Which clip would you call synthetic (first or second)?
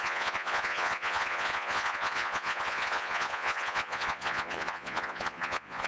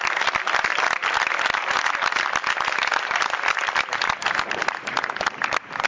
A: first